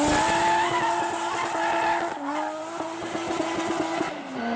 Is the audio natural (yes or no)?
yes